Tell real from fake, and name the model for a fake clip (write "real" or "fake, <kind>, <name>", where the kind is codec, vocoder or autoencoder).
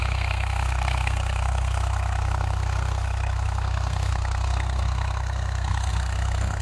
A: fake, codec, SNAC